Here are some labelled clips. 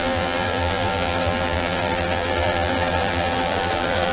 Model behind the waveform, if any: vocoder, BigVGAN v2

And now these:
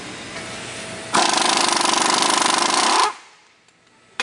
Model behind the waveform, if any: none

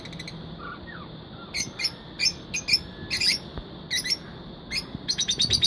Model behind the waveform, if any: none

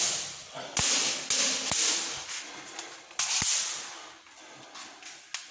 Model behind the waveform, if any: none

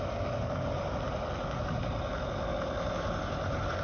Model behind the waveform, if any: none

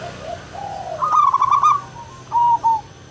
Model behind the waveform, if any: none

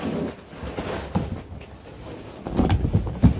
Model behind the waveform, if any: none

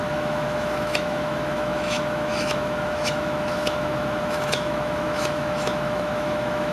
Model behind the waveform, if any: autoencoder, DAC-VAE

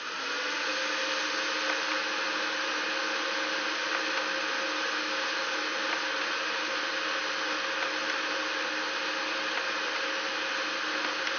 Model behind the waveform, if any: none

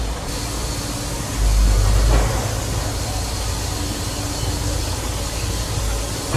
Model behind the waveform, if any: none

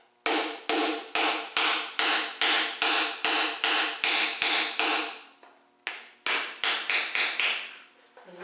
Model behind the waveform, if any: none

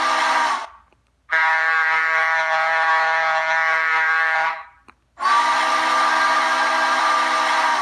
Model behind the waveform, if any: none